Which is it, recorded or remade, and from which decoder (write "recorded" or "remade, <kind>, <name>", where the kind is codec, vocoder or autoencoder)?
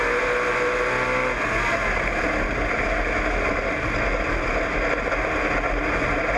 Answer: recorded